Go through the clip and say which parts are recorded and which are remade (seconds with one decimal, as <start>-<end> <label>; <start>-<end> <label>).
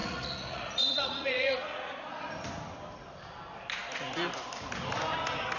0.0-2.3 remade; 2.3-5.6 recorded